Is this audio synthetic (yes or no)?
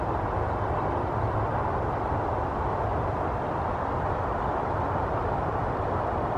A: no